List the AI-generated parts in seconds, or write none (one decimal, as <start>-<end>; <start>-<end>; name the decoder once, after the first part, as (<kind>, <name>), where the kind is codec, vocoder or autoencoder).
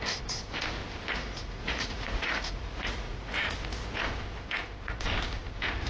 1.3-3.5 (vocoder, Vocos)